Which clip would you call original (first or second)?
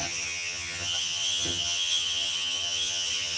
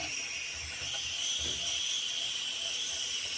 second